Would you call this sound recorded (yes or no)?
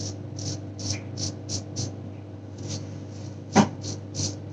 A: yes